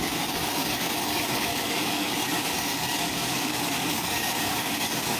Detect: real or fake fake